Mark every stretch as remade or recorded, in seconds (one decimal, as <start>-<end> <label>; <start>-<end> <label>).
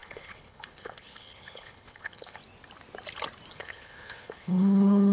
0.0-2.4 remade; 2.4-3.5 recorded; 3.5-5.1 remade